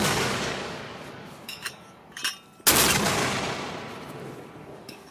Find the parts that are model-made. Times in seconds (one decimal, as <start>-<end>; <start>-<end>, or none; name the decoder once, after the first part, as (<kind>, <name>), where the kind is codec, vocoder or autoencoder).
0.0-2.2 (codec, DAC); 4.6-5.1